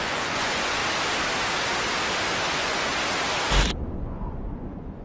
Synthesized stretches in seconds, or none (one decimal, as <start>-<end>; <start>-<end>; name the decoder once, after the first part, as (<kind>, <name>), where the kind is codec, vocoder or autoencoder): 0.0-0.8 (vocoder, Vocos); 2.5-2.9; 3.8-5.0